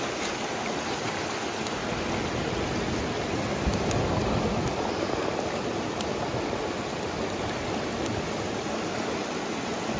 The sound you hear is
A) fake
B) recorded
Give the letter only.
B